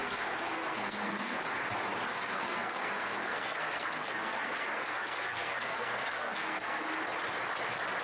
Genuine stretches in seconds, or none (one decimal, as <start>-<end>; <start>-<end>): 1.4-2.1; 6.8-8.0